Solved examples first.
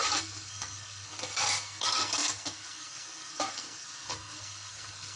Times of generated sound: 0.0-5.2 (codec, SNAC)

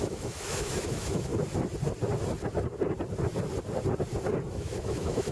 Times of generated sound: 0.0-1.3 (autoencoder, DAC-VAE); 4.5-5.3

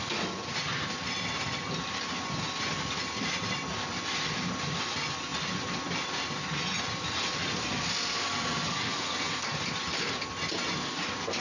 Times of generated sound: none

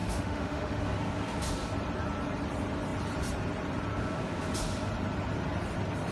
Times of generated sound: 0.0-0.8 (autoencoder, DAC-VAE)

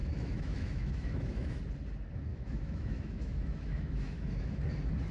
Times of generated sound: 0.0-1.6 (autoencoder, DAC-VAE); 2.3-4.6

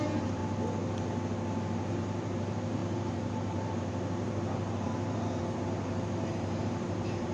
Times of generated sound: 0.0-0.4 (vocoder, BigVGAN v2); 1.9-7.3

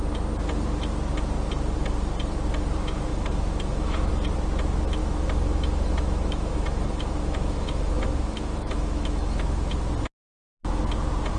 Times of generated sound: 3.1-4.1 (autoencoder, DAC-VAE); 5.0-9.7

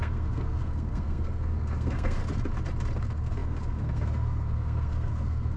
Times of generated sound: 0.0-2.2 (codec, SNAC); 3.0-5.6